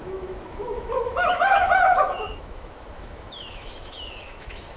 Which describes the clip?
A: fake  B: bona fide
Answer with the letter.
A